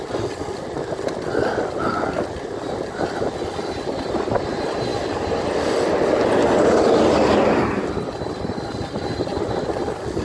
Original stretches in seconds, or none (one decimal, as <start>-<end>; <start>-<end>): 0.0-10.2